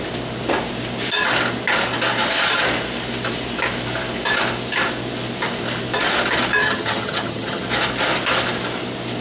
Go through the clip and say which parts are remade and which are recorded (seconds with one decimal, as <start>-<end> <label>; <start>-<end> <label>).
0.0-6.6 recorded; 6.6-7.6 remade; 7.6-9.2 recorded